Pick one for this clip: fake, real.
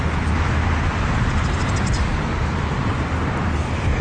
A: real